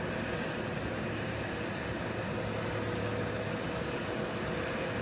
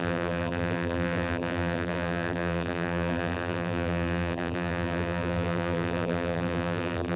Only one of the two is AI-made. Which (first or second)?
second